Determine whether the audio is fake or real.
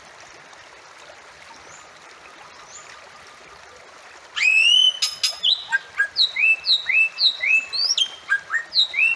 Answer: real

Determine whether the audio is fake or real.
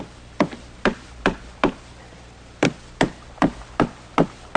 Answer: real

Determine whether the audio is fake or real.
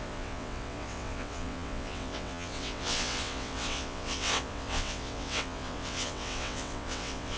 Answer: fake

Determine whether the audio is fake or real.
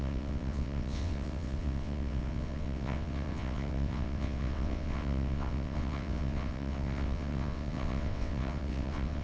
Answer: fake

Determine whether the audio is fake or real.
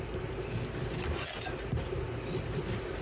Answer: real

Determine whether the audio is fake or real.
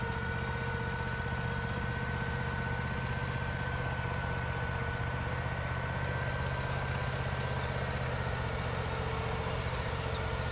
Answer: real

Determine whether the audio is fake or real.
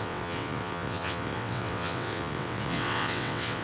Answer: fake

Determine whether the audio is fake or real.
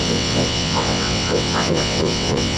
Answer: fake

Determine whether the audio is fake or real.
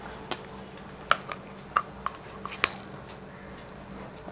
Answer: real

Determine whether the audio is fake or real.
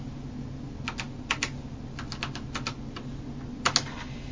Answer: real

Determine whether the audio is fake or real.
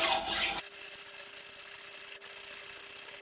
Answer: real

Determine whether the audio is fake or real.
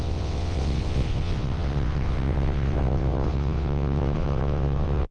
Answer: fake